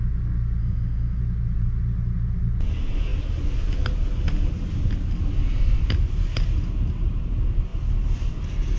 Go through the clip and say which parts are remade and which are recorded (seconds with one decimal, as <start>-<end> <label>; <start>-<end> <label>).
0.0-0.6 recorded; 0.6-1.2 remade; 1.2-8.8 recorded